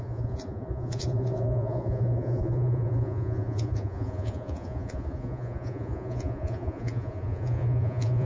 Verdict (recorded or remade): remade